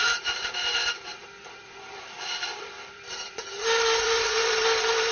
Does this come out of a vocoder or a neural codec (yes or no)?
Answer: yes